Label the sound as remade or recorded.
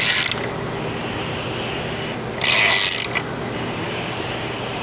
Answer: recorded